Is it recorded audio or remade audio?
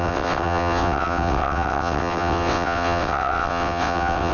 remade